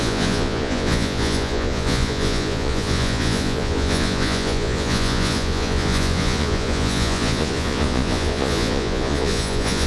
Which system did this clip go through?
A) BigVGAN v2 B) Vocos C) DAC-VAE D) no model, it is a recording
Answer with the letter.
B